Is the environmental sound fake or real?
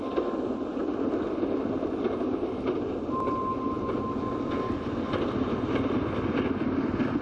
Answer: real